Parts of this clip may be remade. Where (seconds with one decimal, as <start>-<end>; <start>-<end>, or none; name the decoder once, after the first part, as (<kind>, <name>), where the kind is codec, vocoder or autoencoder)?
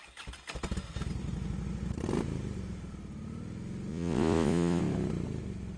3.9-4.8 (vocoder, Vocos)